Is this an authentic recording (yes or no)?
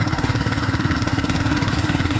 no